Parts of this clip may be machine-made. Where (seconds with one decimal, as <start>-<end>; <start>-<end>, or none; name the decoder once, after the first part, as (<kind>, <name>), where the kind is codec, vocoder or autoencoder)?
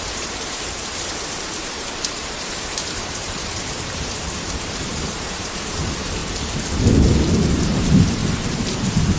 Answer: 0.0-6.2 (vocoder, BigVGAN v2); 7.5-8.2